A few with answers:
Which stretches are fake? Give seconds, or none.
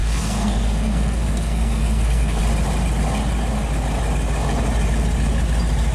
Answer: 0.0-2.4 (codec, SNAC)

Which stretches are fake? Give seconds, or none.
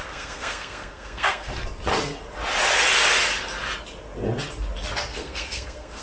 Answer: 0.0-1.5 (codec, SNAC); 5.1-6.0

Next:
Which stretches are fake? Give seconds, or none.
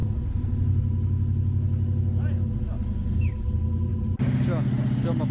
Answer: none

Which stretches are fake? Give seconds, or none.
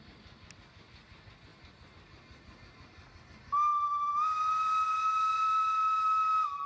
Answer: none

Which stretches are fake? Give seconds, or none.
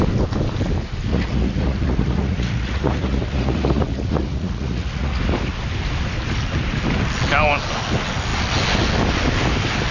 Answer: 1.1-5.2 (vocoder, Vocos)